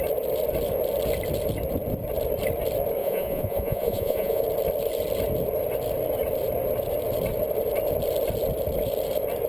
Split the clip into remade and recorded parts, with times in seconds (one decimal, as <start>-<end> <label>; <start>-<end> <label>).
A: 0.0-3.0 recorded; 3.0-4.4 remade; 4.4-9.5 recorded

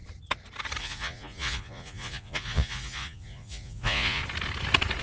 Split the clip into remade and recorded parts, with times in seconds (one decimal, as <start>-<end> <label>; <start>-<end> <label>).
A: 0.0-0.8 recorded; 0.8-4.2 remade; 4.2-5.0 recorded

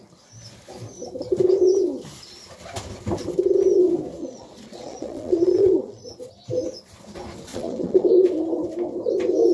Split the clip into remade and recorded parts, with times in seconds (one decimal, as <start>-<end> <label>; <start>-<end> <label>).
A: 0.0-4.2 recorded; 4.2-6.0 remade; 6.0-7.5 recorded; 7.5-8.1 remade; 8.1-9.5 recorded

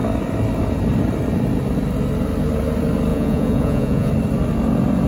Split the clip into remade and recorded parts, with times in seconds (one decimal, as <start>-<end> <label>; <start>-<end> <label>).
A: 0.0-3.1 recorded; 3.1-4.1 remade; 4.1-5.1 recorded